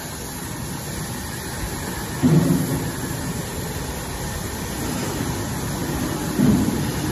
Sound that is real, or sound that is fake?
real